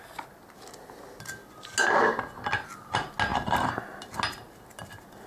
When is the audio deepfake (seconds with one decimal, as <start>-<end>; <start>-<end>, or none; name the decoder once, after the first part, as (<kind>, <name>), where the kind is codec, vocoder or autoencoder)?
none